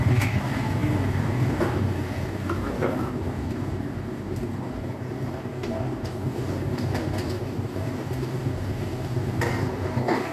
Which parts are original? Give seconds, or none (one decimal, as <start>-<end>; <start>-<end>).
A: none